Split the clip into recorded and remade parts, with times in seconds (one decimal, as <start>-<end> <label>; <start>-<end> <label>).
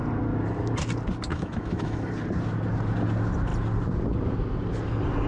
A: 0.0-1.3 recorded; 1.3-2.1 remade; 2.1-5.3 recorded